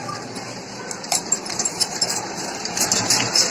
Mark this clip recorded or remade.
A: remade